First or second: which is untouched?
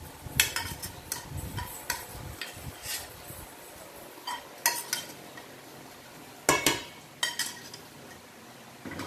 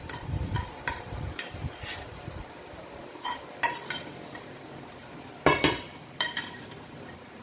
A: first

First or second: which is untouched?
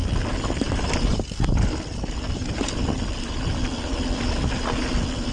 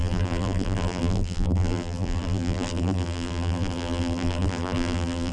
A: first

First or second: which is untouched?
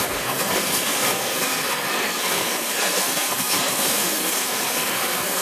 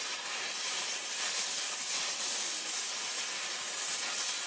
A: second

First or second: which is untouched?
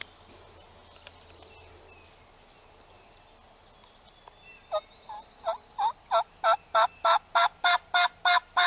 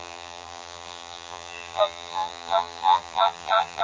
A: first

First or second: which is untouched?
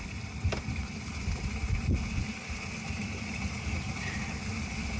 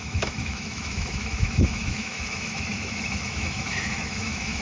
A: first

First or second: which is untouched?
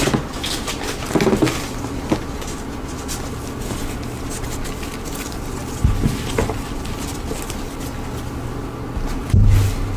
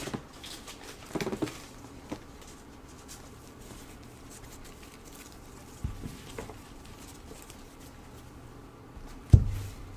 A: first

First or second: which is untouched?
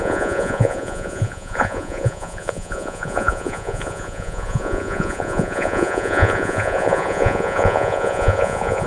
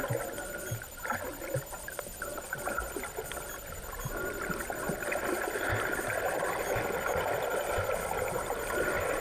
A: second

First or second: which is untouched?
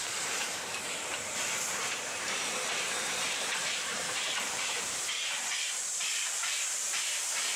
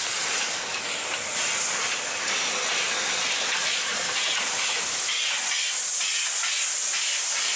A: second